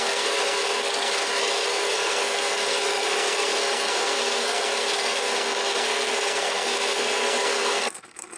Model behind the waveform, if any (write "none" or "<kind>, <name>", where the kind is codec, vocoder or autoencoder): codec, SNAC